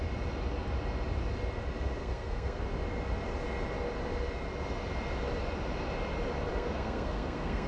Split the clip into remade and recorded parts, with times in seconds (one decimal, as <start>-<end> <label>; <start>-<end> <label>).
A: 0.0-2.0 recorded; 2.0-2.6 remade; 2.6-6.5 recorded; 6.5-7.7 remade